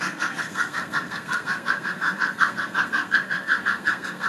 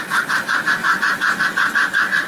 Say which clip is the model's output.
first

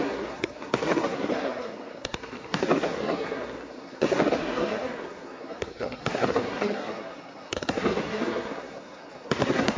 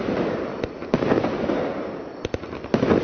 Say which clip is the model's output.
first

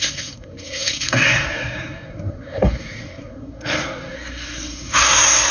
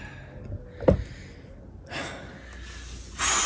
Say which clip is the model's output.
first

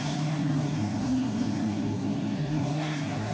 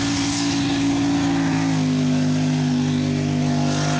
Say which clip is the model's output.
first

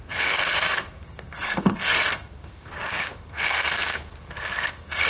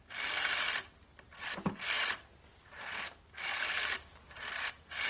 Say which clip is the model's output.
first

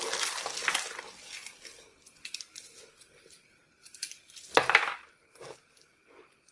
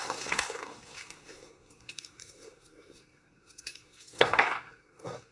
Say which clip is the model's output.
second